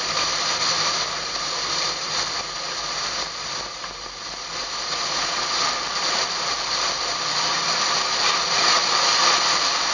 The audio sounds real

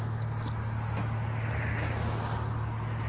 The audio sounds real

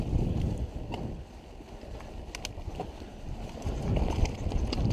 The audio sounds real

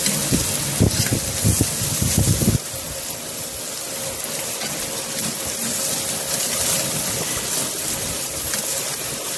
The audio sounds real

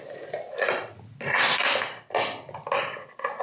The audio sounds real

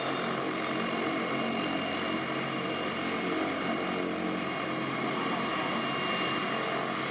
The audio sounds real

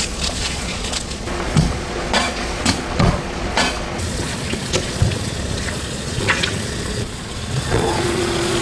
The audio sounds fake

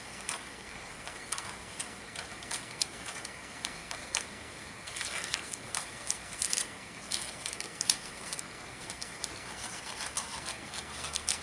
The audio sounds fake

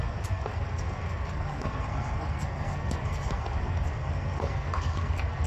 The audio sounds fake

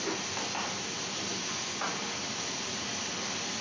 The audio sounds real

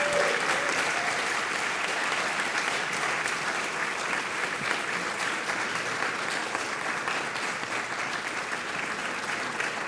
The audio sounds fake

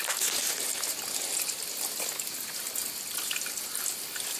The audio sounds real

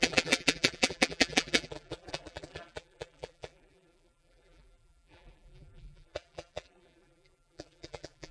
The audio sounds fake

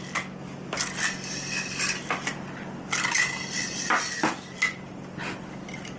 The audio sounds real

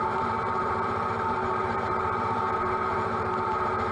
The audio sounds fake